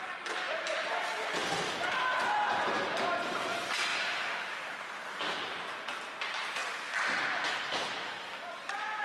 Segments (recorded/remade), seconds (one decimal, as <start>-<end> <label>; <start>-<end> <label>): 0.0-3.9 recorded; 3.9-5.3 remade; 5.3-9.0 recorded